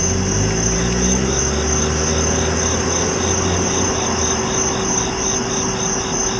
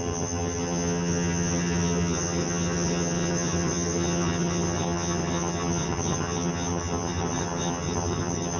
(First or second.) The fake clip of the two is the second